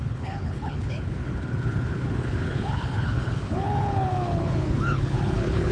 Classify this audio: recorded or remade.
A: remade